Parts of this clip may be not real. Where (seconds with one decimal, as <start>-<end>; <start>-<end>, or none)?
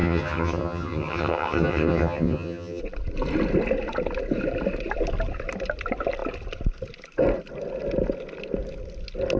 0.0-2.8